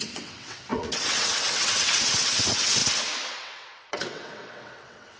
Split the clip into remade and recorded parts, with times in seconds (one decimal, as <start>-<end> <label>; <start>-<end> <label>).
0.0-2.8 remade; 2.8-3.3 recorded; 3.3-5.2 remade